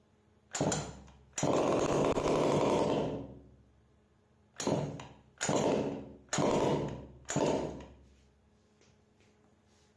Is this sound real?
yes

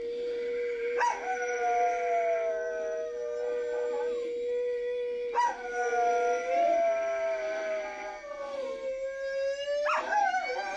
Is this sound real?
yes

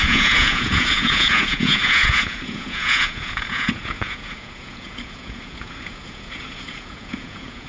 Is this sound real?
no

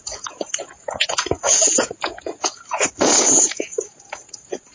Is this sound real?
no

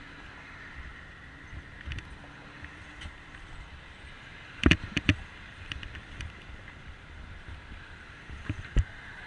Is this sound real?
no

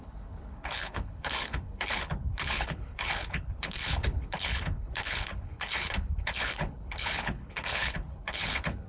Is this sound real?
no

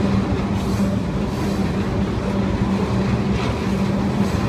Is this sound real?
yes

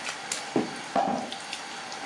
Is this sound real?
yes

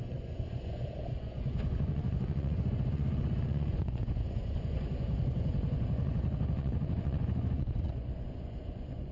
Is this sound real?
no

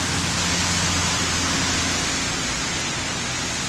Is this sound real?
yes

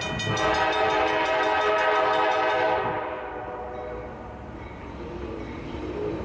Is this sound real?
no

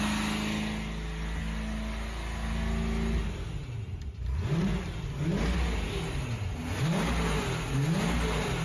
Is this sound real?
yes